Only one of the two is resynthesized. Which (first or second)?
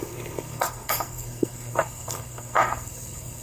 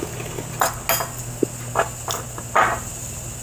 first